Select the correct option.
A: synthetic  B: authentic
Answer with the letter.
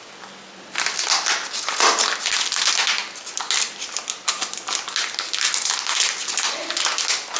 B